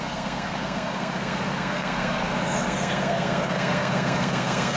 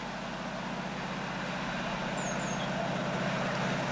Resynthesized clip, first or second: first